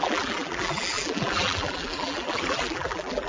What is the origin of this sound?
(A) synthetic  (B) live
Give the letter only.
A